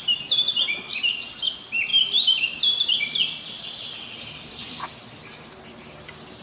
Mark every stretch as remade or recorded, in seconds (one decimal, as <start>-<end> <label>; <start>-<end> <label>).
0.0-0.9 recorded; 0.9-1.5 remade; 1.5-1.9 recorded; 1.9-5.2 remade; 5.2-6.4 recorded